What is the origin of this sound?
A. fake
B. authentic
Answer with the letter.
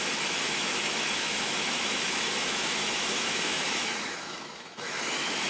A